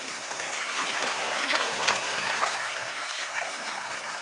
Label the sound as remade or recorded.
remade